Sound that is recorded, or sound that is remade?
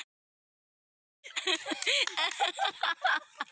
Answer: recorded